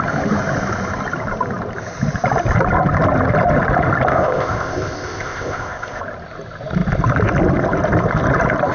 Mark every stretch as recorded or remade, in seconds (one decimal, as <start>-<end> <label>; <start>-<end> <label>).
0.0-4.1 recorded; 4.1-6.0 remade; 6.0-8.7 recorded